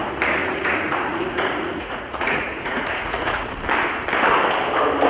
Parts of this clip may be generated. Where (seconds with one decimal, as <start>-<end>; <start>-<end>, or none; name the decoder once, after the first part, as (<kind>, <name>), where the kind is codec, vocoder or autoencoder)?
0.4-3.5 (vocoder, Vocos)